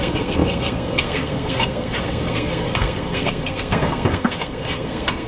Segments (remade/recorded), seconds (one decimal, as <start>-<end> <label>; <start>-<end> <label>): 0.0-5.3 remade